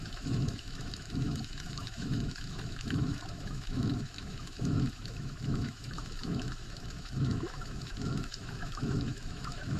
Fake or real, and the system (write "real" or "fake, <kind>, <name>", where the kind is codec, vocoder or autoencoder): fake, autoencoder, DAC-VAE